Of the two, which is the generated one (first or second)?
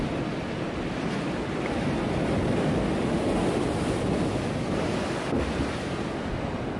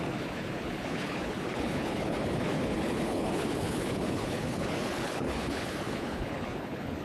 second